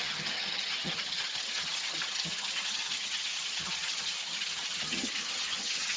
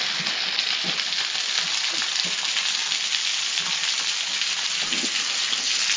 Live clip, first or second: second